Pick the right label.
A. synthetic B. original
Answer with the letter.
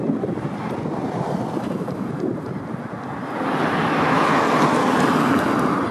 B